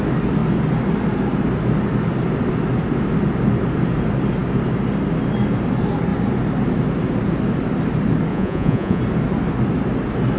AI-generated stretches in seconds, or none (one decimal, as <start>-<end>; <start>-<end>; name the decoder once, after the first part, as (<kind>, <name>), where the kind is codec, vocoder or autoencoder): 8.3-9.0 (vocoder, Vocos)